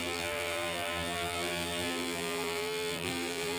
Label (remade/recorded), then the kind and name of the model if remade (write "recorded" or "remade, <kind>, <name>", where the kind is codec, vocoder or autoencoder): remade, vocoder, BigVGAN v2